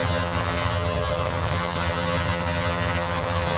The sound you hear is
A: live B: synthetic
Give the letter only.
B